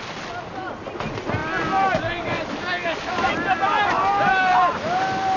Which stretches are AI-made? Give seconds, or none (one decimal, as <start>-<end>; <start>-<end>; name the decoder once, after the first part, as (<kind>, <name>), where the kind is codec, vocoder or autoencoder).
none